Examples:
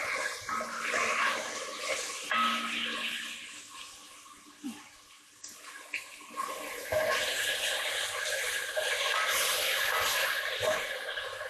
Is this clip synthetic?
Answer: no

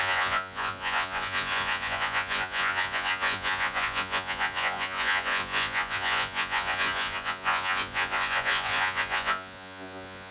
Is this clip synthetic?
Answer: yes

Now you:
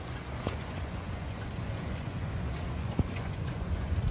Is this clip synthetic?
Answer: yes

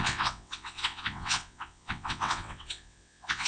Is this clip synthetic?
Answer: yes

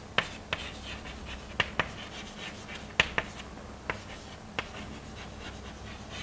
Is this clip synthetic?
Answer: no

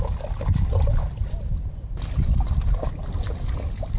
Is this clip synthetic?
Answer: no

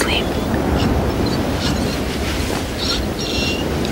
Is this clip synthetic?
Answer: no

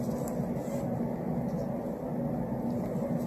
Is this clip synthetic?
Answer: no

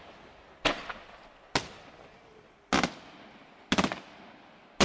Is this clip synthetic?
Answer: no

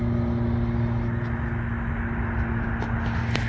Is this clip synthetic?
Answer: no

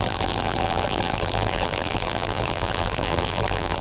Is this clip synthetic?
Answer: yes